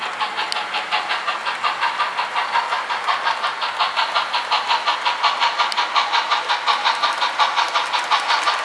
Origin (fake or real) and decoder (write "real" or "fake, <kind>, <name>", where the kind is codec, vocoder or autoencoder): real